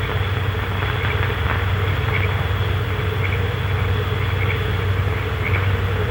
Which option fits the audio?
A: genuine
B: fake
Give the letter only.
A